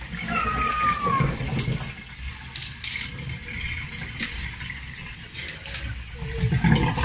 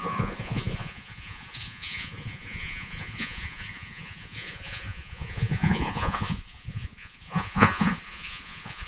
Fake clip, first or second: second